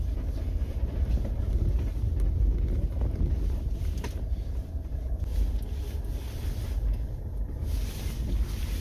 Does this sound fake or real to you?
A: real